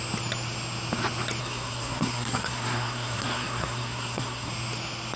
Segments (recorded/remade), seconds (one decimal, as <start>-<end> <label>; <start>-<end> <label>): 0.0-1.4 recorded; 1.4-4.5 remade; 4.5-5.2 recorded